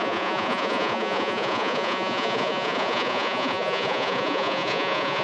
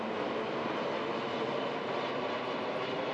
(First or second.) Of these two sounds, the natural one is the second